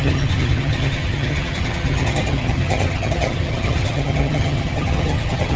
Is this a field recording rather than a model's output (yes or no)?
no